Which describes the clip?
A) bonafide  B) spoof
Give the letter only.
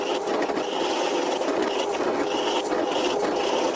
A